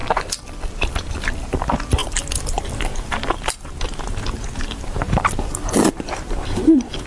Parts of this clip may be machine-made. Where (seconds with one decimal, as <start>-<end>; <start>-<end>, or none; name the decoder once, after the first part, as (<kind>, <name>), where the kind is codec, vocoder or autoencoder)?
1.1-7.1 (vocoder, BigVGAN v2)